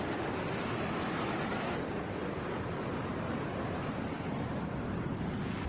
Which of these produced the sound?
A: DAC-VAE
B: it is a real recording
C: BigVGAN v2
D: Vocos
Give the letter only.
B